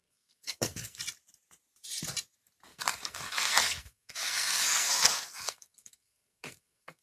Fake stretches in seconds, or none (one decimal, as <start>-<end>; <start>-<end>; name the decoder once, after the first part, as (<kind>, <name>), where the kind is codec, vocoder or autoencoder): 0.0-1.0 (codec, SNAC); 2.7-7.0

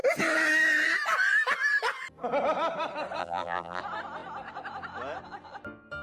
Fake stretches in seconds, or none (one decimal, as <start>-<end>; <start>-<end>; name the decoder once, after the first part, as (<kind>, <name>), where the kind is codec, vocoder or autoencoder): 3.2-3.8 (vocoder, BigVGAN v2)

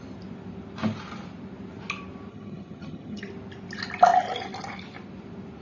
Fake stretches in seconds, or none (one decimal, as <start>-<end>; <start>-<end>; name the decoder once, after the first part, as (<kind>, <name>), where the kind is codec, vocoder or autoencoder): 2.3-3.3 (vocoder, HiFi-GAN)

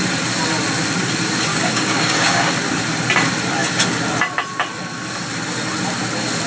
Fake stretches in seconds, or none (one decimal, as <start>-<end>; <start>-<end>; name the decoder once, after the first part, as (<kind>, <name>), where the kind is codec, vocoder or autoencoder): 1.5-2.5 (codec, DAC)

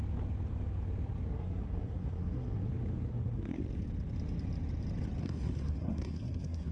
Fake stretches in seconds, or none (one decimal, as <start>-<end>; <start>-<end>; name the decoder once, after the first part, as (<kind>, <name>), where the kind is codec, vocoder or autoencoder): 1.3-2.7 (codec, SNAC); 3.1-3.6; 5.2-6.7